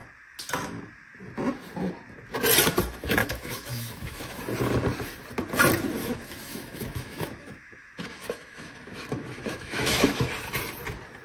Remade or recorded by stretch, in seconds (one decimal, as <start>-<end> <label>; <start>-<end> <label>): 0.0-3.2 recorded; 3.2-4.4 remade; 4.4-6.0 recorded; 6.0-10.3 remade; 10.3-11.2 recorded